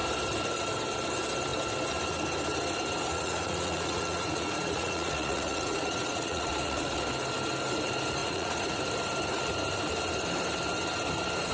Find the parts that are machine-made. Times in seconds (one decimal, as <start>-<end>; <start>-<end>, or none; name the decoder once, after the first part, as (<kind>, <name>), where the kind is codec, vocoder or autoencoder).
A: 3.1-7.0 (vocoder, Vocos); 8.2-8.8